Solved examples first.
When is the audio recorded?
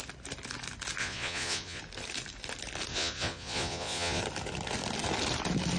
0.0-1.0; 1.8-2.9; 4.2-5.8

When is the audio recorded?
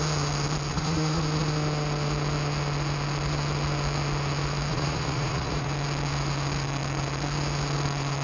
0.0-0.7; 1.2-4.7; 5.7-8.2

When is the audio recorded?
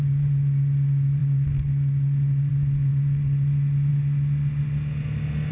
0.0-5.5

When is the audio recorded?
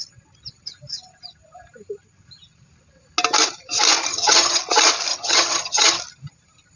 0.0-4.1; 4.6-5.1; 6.0-6.8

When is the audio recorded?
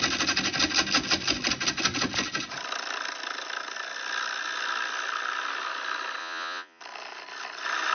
0.0-6.2; 6.8-7.9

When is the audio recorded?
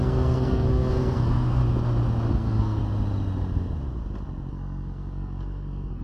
1.6-2.3; 2.8-4.5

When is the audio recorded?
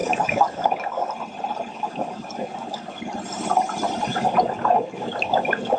1.1-1.7; 3.0-4.1